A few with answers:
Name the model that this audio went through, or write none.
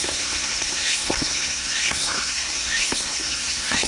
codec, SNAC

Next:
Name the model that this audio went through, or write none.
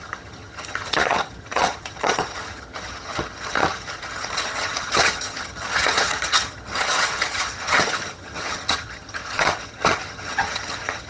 vocoder, HiFi-GAN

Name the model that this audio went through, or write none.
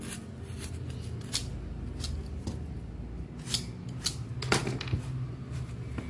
none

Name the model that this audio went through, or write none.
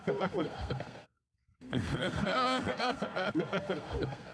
codec, SNAC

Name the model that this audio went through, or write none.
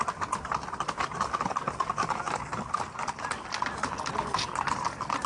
none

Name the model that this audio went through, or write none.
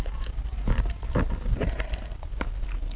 vocoder, BigVGAN v2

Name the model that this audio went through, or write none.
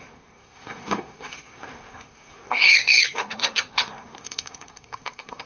codec, SNAC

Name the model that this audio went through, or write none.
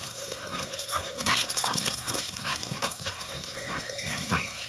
codec, SNAC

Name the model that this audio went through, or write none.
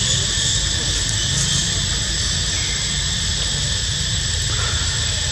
none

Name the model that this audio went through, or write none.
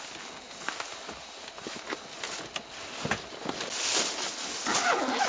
none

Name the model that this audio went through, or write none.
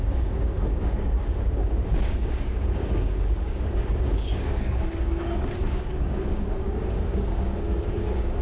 codec, DAC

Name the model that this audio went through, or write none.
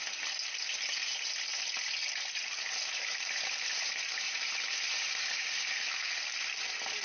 none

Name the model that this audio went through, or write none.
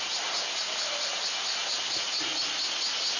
none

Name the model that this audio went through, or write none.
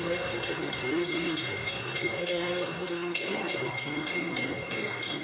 codec, SNAC